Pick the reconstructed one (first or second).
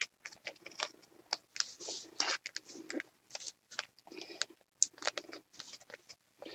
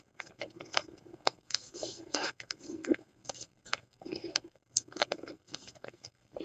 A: second